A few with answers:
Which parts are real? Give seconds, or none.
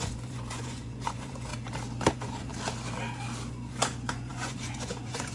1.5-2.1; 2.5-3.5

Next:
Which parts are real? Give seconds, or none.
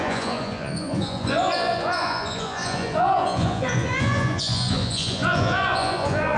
none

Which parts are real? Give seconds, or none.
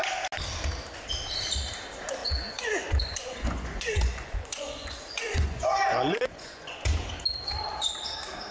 0.0-2.2; 7.1-8.5